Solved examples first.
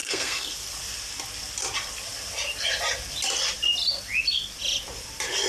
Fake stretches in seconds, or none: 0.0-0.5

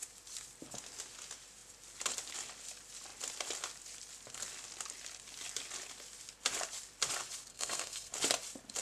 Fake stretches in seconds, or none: 7.5-8.1

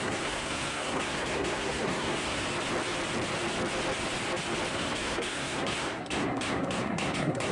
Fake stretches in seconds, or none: 0.0-2.4; 4.7-7.5

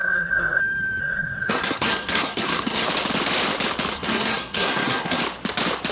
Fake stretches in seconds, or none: 0.0-0.6; 1.0-2.9; 3.9-5.2

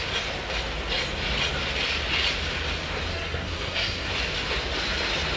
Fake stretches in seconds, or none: 3.1-4.1

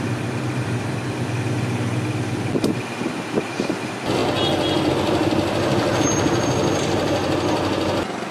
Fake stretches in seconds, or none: none

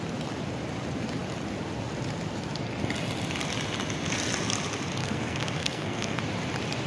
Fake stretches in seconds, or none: 5.0-6.2

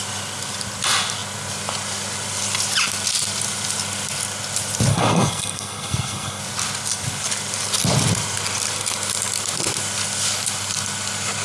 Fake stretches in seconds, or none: 4.9-6.4